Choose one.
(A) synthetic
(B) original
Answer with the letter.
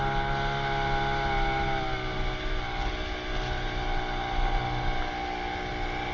B